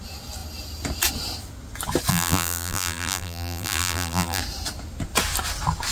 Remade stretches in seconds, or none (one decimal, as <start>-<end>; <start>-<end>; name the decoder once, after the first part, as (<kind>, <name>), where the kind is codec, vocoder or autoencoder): 2.1-4.4 (vocoder, BigVGAN v2)